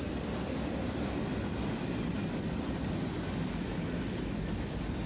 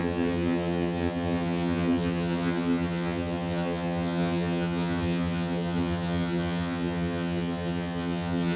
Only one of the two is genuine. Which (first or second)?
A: first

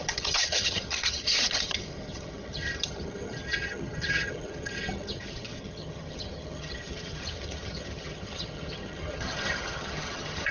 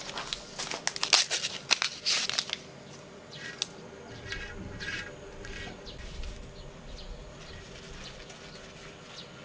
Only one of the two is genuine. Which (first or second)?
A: second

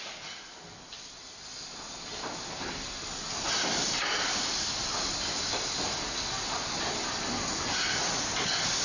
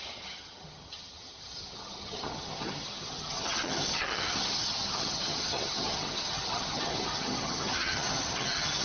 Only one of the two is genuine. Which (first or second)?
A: first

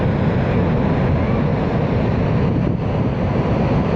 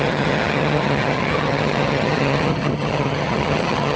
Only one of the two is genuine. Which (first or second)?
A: first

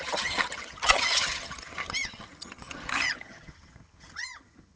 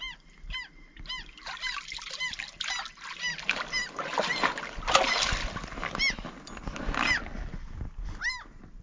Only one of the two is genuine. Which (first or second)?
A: second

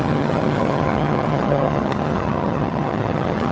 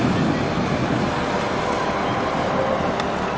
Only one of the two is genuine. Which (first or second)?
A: second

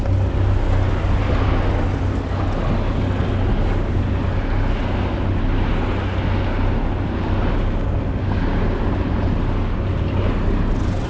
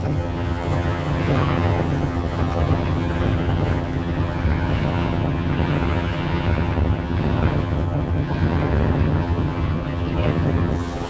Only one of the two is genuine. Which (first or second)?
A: first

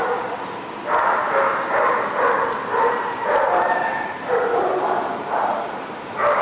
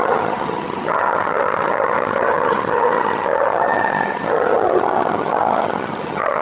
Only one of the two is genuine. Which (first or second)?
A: first